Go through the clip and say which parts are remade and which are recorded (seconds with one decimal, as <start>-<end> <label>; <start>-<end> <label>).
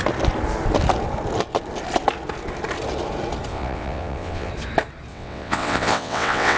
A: 0.0-3.5 recorded; 3.5-4.5 remade; 4.5-5.1 recorded; 5.1-6.6 remade